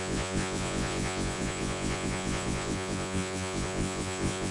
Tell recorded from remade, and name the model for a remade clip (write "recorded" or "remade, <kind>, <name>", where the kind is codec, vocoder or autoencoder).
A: remade, vocoder, Vocos